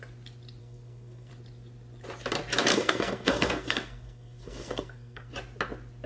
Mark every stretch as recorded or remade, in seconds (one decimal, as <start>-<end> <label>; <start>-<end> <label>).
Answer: 0.0-0.6 recorded; 0.6-1.3 remade; 1.3-2.7 recorded; 2.7-5.3 remade; 5.3-6.1 recorded